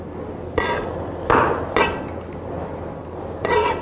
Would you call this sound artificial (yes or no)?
no